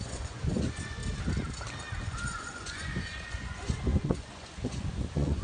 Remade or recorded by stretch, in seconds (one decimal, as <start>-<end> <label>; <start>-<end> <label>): 0.0-1.0 remade; 1.0-2.0 recorded; 2.0-5.4 remade